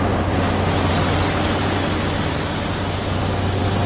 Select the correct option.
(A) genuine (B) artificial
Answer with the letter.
A